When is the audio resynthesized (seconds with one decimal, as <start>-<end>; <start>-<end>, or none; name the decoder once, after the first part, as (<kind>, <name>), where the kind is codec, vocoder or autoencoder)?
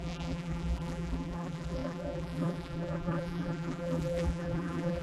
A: 0.0-5.0 (vocoder, BigVGAN v2)